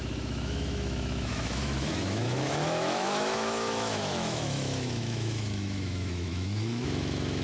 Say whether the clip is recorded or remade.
remade